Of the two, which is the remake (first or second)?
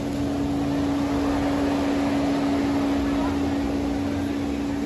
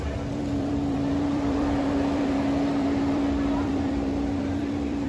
second